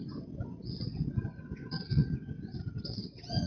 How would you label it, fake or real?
fake